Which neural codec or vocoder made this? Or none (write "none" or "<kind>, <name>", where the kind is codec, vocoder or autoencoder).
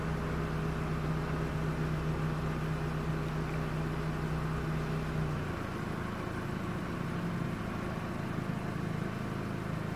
none